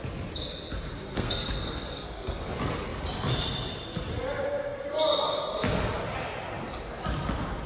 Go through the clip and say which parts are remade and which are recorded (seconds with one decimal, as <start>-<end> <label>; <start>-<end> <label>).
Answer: 0.0-1.1 recorded; 1.1-2.5 remade; 2.5-7.7 recorded